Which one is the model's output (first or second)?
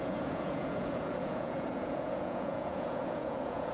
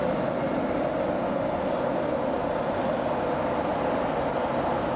first